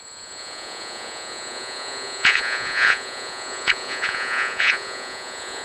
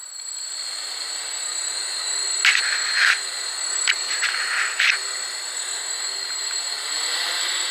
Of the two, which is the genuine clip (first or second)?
second